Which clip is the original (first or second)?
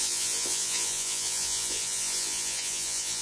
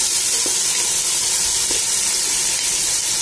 second